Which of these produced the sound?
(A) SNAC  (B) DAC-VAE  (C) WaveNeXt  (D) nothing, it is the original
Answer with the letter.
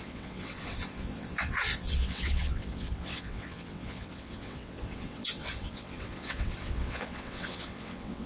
C